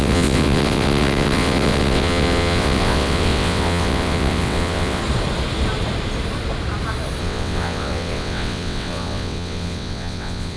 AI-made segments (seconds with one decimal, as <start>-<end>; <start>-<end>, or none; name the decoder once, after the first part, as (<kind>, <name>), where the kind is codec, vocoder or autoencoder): 0.0-5.0 (vocoder, WaveNeXt); 7.2-10.6